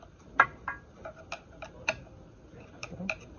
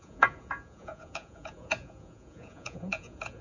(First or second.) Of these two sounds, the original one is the first